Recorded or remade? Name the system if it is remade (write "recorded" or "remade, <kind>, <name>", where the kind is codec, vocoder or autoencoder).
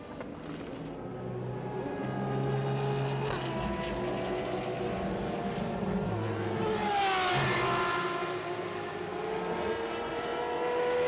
recorded